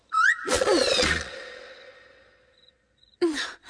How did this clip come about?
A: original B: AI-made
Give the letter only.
B